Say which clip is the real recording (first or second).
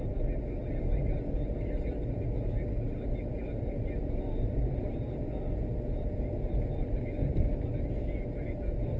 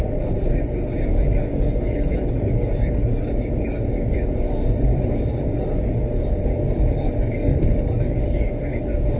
first